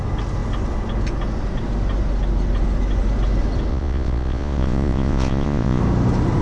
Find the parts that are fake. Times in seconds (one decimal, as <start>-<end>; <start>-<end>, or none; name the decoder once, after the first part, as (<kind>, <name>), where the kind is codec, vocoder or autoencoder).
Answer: 3.7-5.8 (vocoder, Vocos)